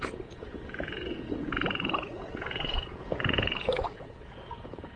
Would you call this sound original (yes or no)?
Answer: no